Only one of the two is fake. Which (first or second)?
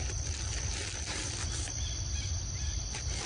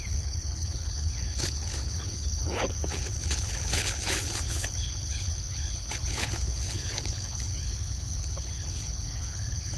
second